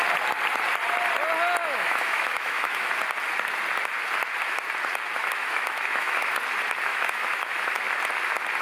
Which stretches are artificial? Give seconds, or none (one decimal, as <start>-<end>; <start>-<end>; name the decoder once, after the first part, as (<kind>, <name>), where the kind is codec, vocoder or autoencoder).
1.6-2.9 (autoencoder, DAC-VAE); 5.2-6.3; 6.9-7.8